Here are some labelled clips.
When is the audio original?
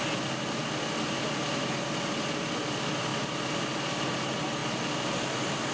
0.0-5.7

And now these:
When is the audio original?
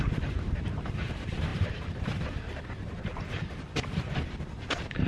none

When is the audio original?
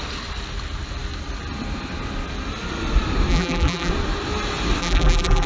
0.0-3.3; 3.9-4.8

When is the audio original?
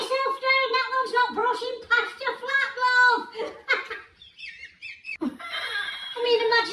0.0-6.7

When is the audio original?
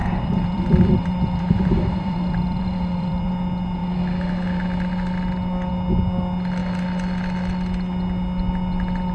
3.3-9.1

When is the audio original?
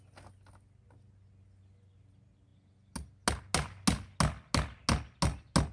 0.0-5.7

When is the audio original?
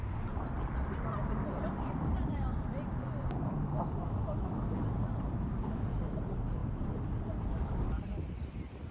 none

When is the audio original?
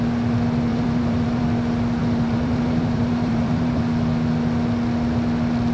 0.0-0.7; 1.4-2.0; 3.8-5.7